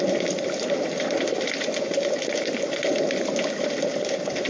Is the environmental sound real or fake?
real